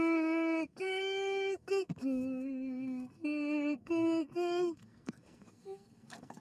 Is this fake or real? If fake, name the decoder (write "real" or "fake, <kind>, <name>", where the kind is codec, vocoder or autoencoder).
fake, codec, SNAC